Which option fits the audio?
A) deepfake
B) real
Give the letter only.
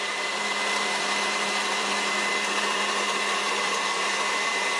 A